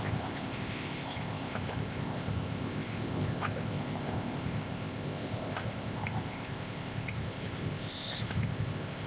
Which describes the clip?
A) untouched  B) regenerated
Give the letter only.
B